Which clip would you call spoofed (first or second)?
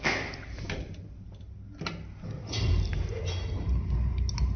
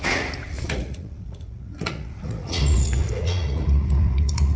second